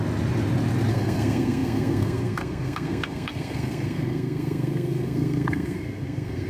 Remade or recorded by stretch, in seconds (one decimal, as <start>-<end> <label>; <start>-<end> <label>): 0.0-0.9 recorded; 0.9-6.5 remade